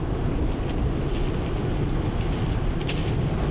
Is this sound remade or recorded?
recorded